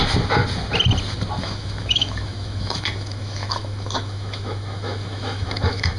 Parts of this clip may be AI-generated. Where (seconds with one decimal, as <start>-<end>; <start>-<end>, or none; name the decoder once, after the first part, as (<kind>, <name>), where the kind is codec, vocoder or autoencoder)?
1.4-6.0 (autoencoder, DAC-VAE)

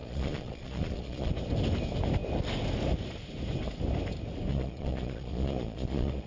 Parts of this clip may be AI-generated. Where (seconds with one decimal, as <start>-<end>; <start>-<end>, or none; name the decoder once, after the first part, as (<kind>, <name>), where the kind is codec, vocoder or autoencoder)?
0.0-1.3 (vocoder, Vocos); 4.5-6.3

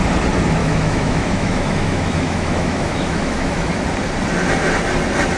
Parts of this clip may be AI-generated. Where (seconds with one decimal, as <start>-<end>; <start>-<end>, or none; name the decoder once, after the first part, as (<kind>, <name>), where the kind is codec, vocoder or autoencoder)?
0.6-3.8 (autoencoder, DAC-VAE)

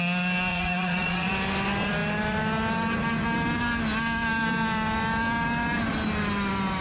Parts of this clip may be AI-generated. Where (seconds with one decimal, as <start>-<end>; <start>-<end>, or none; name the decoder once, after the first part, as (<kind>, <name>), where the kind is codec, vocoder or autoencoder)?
0.5-1.3 (vocoder, Vocos)

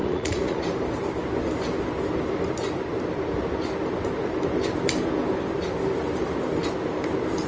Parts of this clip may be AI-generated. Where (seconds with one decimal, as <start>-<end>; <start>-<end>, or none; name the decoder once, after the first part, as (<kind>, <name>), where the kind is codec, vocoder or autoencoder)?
0.0-0.6 (vocoder, Vocos)